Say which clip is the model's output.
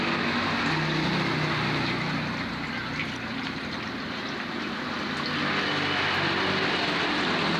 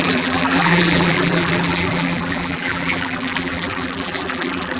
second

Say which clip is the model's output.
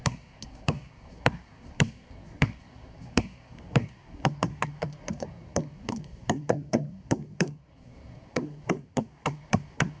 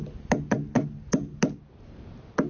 first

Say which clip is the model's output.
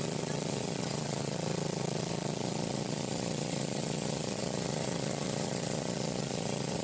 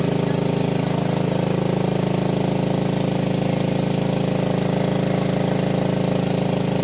first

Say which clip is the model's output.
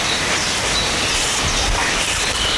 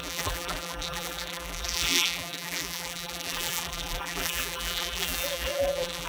second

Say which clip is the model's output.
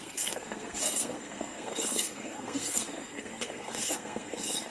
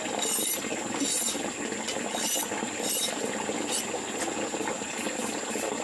first